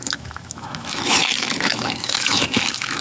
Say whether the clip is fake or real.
fake